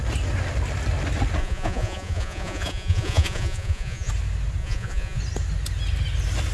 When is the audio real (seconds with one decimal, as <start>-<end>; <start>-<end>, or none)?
0.0-1.4; 4.1-4.6; 5.2-6.5